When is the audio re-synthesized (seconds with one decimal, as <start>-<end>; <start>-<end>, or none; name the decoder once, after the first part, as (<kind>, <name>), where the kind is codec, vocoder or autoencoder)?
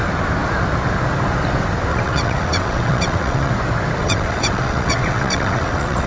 1.9-3.5 (vocoder, WaveNeXt); 4.0-6.1